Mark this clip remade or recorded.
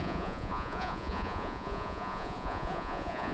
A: remade